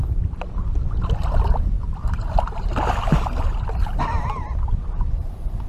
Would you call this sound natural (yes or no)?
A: yes